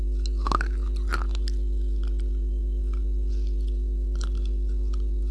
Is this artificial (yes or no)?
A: no